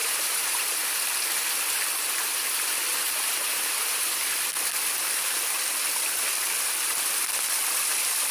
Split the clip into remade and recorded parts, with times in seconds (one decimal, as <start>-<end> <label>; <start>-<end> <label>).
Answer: 0.0-0.9 remade; 0.9-2.9 recorded; 2.9-4.1 remade; 4.1-8.3 recorded